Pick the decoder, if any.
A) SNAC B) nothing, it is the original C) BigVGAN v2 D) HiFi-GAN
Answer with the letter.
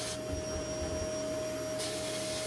B